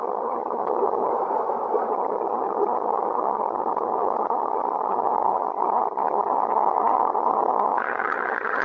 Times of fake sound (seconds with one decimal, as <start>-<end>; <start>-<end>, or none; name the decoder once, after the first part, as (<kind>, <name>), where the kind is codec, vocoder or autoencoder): 0.0-1.1 (vocoder, HiFi-GAN); 1.9-8.6